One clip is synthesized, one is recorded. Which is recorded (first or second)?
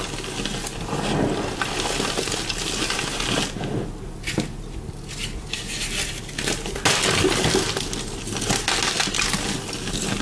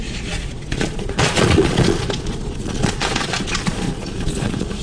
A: first